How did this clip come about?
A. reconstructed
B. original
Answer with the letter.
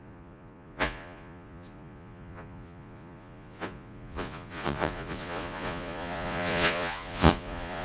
A